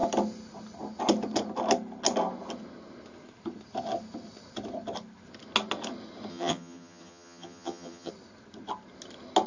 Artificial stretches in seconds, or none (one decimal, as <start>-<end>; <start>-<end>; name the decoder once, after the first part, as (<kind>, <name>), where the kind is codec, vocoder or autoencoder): 6.3-8.1 (vocoder, HiFi-GAN)